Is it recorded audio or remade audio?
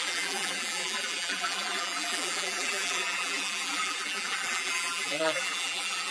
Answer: remade